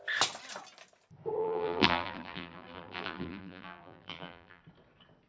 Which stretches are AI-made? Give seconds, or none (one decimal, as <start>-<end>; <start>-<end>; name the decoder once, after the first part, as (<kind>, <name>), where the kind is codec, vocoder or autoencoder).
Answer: 1.4-4.6 (vocoder, BigVGAN v2)